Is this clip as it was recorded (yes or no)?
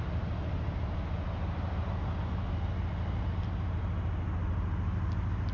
yes